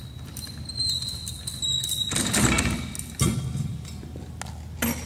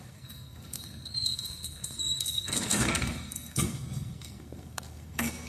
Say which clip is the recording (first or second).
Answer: first